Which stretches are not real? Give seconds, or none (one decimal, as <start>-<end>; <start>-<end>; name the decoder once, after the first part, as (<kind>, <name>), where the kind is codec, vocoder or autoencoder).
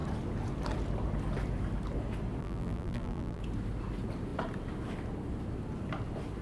2.4-3.4 (vocoder, BigVGAN v2)